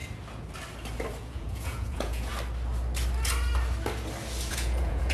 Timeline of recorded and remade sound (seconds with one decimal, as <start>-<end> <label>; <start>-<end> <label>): 0.0-1.2 recorded; 1.2-2.3 remade; 2.3-4.5 recorded; 4.5-5.1 remade